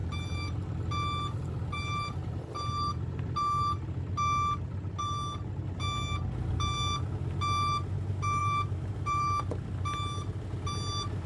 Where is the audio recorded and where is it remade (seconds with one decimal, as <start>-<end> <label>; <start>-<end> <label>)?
0.0-0.7 remade; 0.7-8.4 recorded; 8.4-9.2 remade; 9.2-11.3 recorded